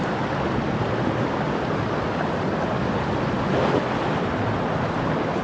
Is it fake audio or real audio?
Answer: real